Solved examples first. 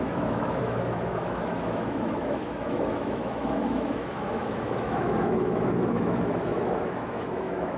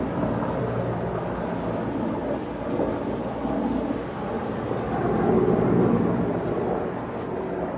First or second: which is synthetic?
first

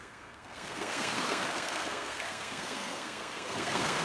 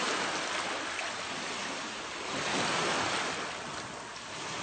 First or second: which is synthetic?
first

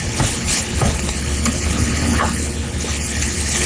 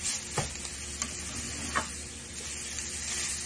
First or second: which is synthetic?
first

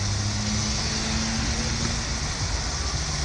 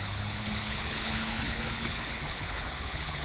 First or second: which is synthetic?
second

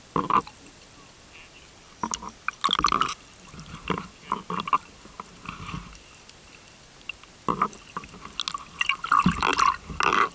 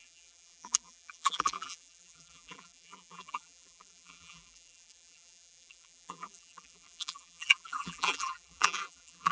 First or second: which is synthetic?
second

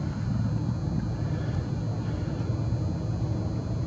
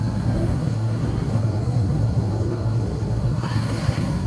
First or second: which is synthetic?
second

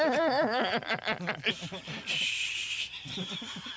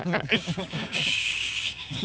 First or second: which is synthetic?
second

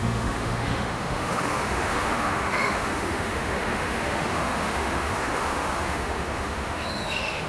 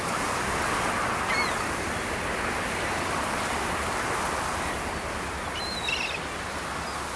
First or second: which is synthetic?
first